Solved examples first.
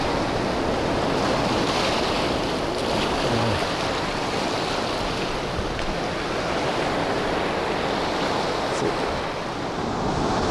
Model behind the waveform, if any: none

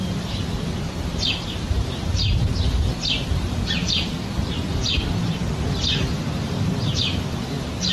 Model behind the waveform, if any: vocoder, BigVGAN v2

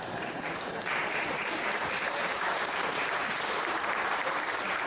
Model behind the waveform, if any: vocoder, BigVGAN v2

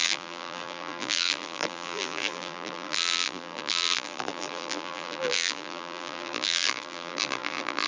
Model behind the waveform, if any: vocoder, BigVGAN v2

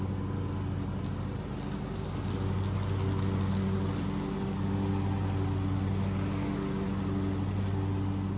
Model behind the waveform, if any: none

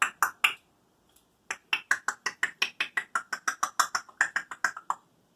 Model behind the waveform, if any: none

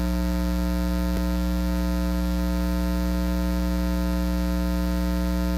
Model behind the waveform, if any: none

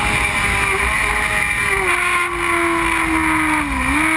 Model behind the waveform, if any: none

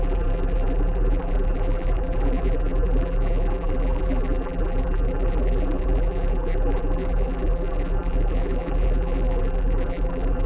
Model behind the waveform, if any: vocoder, BigVGAN v2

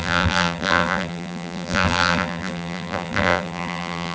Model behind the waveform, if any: vocoder, BigVGAN v2